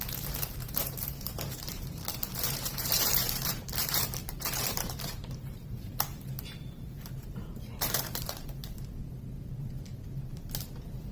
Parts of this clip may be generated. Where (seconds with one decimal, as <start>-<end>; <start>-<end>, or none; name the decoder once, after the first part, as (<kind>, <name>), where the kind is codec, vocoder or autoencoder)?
0.0-8.6 (vocoder, BigVGAN v2); 9.4-11.1